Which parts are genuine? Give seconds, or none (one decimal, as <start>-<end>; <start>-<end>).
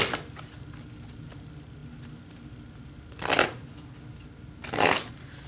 0.0-5.5